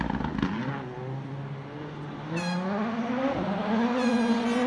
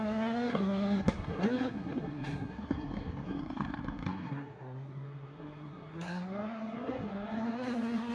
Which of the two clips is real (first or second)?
first